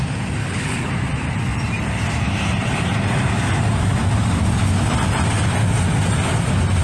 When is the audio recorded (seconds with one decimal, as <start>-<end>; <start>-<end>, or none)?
0.0-0.4; 0.9-6.8